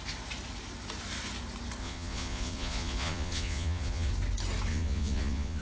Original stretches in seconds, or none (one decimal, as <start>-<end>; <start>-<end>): 0.0-1.8; 4.1-4.7